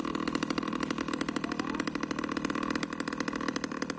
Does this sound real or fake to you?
real